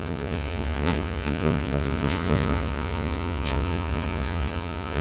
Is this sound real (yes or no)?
no